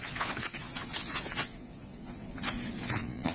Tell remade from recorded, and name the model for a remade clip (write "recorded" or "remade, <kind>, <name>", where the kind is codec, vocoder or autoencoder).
remade, vocoder, Vocos